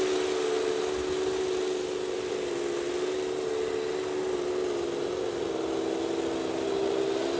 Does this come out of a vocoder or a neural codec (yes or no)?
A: no